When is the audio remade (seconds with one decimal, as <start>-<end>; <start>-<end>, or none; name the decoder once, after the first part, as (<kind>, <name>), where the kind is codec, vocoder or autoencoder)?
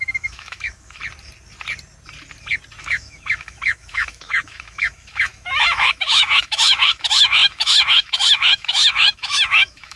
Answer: 0.0-1.0 (autoencoder, DAC-VAE); 2.8-10.0